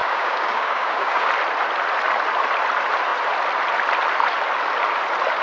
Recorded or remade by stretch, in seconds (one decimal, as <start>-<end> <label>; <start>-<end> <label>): 0.0-1.3 remade; 1.3-5.4 recorded